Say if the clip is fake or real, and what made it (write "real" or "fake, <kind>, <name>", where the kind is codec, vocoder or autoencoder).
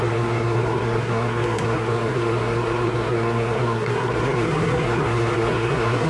fake, codec, SNAC